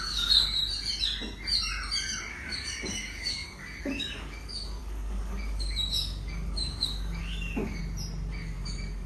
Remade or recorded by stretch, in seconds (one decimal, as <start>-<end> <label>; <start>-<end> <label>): 0.0-0.6 remade; 0.6-2.3 recorded; 2.3-7.8 remade; 7.8-8.3 recorded; 8.3-9.1 remade